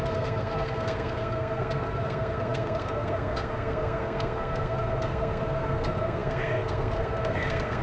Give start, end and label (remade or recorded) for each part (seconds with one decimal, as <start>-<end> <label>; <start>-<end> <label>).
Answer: 0.0-7.8 remade